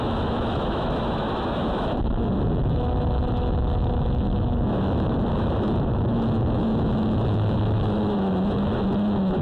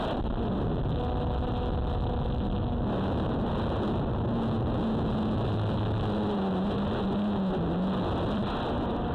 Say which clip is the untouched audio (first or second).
second